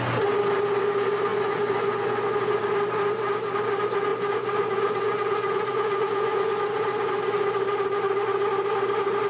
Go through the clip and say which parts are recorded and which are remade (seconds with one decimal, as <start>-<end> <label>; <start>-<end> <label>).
0.0-1.3 recorded; 1.3-2.6 remade; 2.6-4.1 recorded; 4.1-7.5 remade; 7.5-9.3 recorded